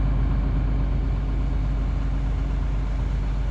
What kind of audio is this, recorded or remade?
recorded